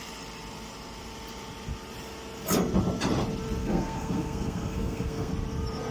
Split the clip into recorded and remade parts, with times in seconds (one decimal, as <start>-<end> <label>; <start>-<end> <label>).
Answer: 0.0-3.6 recorded; 3.6-5.3 remade; 5.3-5.9 recorded